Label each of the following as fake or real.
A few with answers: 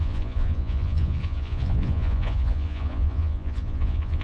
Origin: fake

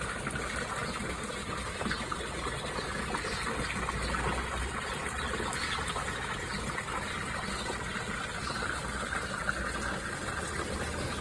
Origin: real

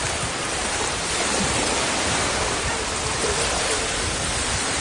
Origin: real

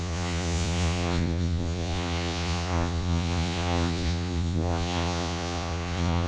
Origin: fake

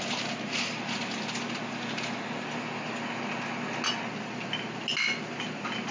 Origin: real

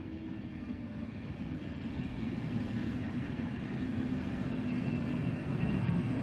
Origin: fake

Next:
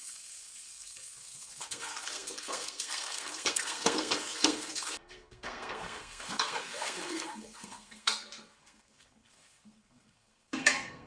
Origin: fake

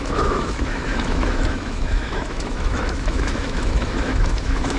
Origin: fake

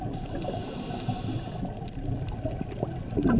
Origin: real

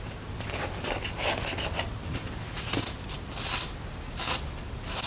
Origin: real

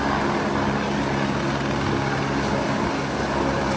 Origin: real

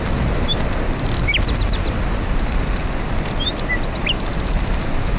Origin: real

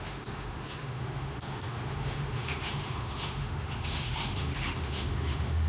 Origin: fake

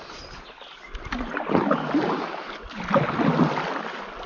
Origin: real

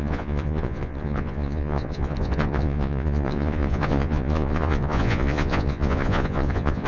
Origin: fake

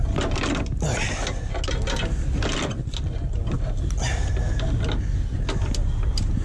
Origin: real